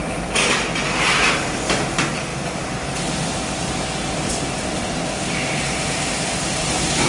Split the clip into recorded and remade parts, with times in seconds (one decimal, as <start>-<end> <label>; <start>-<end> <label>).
0.0-7.1 recorded